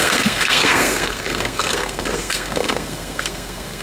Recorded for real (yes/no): no